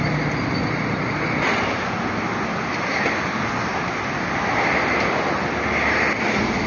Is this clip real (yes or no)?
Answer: yes